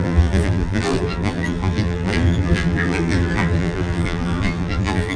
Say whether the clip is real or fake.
fake